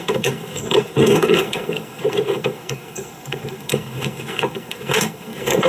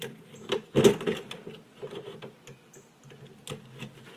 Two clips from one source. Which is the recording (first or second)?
second